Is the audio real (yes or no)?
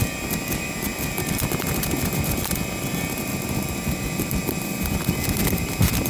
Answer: no